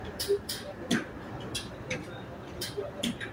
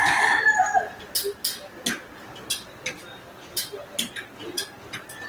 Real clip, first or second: second